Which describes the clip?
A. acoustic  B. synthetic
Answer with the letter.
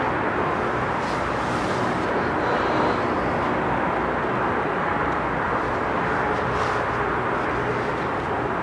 A